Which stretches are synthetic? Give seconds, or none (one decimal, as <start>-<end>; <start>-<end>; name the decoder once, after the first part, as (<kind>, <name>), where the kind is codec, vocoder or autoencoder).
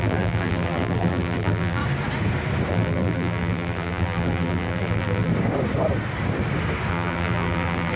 0.0-1.8 (vocoder, BigVGAN v2); 2.7-5.3; 6.9-8.0